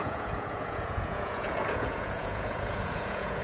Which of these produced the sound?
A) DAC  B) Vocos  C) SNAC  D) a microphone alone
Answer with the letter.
B